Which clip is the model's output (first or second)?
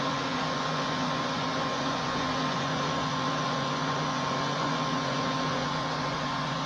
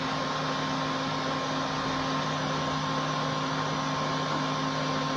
first